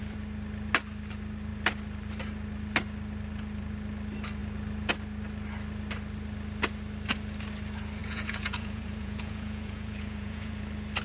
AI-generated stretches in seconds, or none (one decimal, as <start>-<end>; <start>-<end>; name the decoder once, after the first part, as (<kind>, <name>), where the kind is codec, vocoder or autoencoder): 8.0-10.6 (vocoder, Vocos)